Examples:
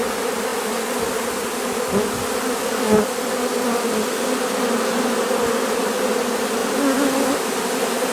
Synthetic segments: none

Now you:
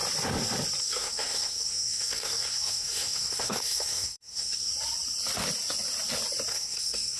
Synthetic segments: 0.8-4.7 (codec, SNAC); 6.5-7.2

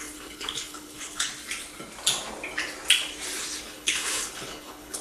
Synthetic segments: 0.0-1.3 (codec, HILCodec); 3.6-5.0

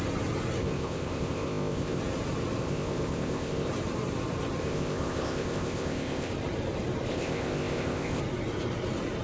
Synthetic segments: 0.6-2.0 (codec, ZipCodec); 2.6-3.7; 4.6-6.3; 7.1-8.2

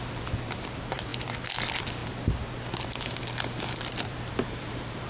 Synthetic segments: 0.0-1.1 (vocoder, BigVGAN v2); 1.6-5.1

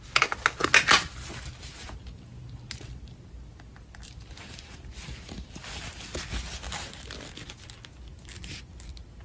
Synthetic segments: none